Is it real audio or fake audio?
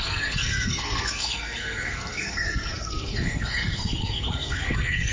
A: fake